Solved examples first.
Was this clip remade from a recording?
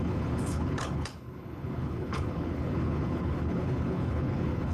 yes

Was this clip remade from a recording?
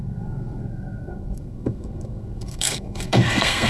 yes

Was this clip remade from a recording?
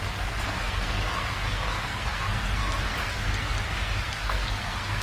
yes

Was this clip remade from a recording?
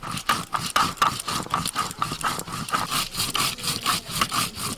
no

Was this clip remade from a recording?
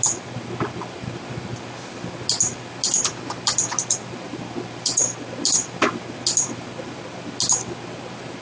no